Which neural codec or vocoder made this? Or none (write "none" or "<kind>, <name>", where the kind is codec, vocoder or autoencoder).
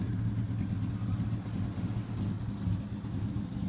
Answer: none